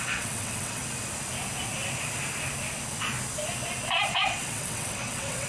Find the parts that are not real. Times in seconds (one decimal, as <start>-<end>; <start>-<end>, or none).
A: 0.0-0.8; 4.1-5.5